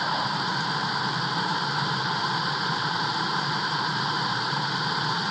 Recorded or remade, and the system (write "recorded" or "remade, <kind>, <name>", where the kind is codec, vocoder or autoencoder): remade, vocoder, BigVGAN v2